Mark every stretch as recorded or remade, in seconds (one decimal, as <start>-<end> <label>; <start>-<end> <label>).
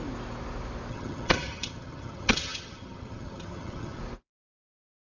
0.0-0.9 recorded; 0.9-4.0 remade; 4.0-5.2 recorded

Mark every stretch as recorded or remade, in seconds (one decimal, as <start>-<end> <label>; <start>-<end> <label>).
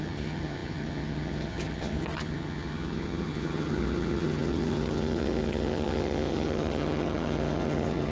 0.0-8.1 remade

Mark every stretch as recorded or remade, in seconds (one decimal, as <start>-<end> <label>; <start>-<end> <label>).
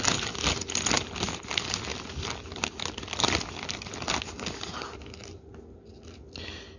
0.0-6.8 recorded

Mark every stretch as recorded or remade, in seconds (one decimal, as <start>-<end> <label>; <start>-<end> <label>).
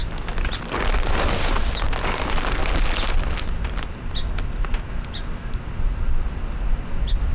0.0-7.3 recorded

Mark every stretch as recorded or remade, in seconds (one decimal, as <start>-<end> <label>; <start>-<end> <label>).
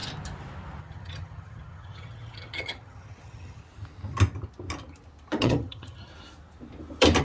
0.0-0.8 recorded; 0.8-3.6 remade; 3.6-5.4 recorded; 5.4-6.1 remade; 6.1-7.2 recorded